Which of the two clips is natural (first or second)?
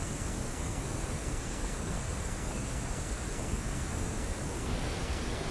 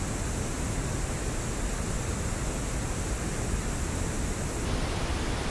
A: second